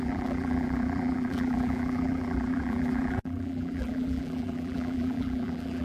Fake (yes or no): yes